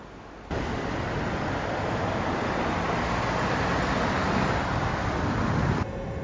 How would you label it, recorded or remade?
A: recorded